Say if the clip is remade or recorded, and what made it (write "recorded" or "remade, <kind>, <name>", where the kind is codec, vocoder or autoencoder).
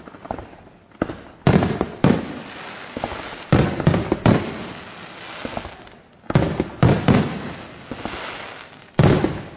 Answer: recorded